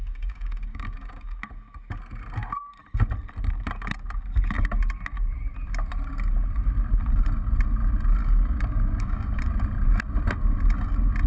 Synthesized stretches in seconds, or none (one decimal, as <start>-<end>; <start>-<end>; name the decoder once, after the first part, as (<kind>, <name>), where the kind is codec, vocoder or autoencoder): 0.0-1.4 (codec, DAC); 8.2-9.4